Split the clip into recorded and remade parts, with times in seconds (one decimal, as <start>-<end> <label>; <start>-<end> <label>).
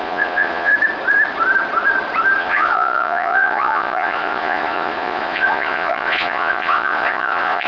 0.0-0.7 remade; 0.7-2.4 recorded; 2.4-7.7 remade